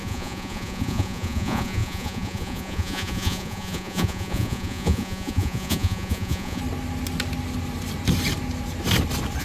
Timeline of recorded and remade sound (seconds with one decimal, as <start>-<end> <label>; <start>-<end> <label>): 0.0-6.6 remade; 6.6-9.4 recorded